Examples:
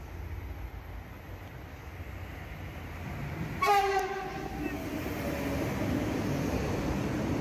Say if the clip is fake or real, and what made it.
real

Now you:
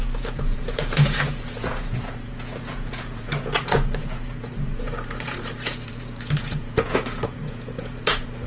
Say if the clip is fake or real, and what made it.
fake, vocoder, Vocos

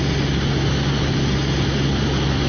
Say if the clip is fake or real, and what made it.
real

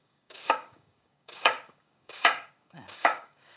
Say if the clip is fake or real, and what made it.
fake, codec, DAC